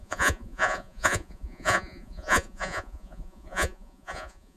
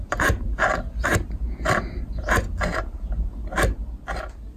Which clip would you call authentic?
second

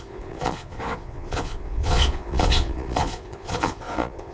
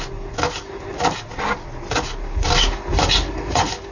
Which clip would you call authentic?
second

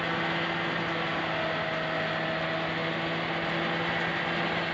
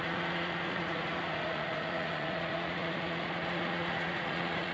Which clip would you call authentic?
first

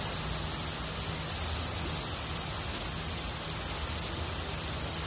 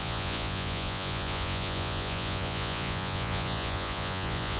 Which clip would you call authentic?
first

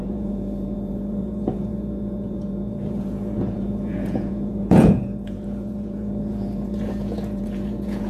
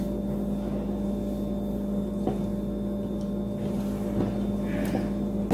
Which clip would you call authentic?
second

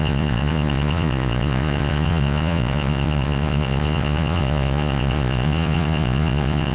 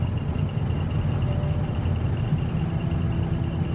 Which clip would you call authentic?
second